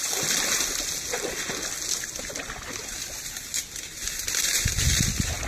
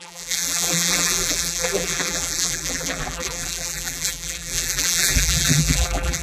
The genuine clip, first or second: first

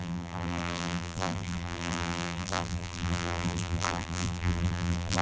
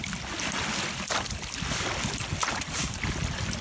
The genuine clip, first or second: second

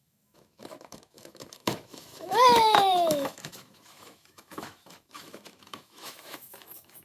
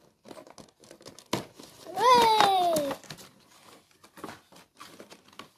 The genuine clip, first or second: second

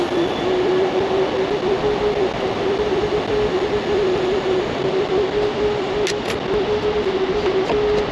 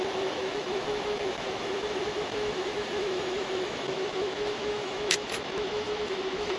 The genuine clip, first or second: first